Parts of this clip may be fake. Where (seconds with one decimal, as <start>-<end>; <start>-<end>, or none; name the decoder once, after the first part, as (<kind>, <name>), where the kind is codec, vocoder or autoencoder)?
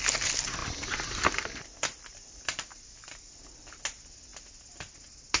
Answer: 0.6-3.3 (vocoder, BigVGAN v2)